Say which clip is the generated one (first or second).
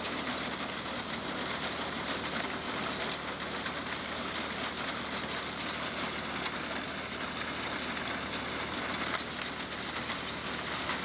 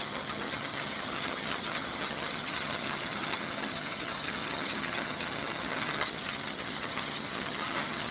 second